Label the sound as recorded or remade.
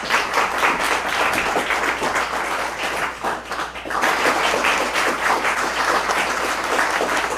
recorded